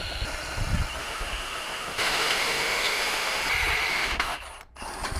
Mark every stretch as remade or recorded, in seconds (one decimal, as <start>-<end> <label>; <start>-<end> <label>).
0.0-1.0 recorded; 1.0-3.4 remade; 3.4-3.9 recorded; 3.9-4.4 remade; 4.4-5.2 recorded